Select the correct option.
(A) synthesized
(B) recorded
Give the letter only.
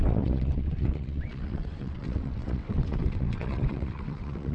A